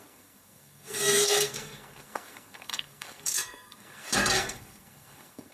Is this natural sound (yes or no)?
no